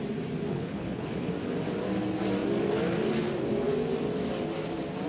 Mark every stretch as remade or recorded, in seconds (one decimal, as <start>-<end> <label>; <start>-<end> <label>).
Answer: 0.0-0.5 recorded; 0.5-1.3 remade; 1.3-5.1 recorded